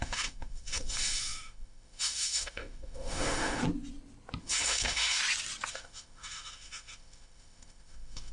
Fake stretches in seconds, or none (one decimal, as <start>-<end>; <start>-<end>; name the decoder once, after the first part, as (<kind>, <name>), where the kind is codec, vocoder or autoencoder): 0.0-3.6 (autoencoder, DAC-VAE); 4.4-5.2; 5.7-8.3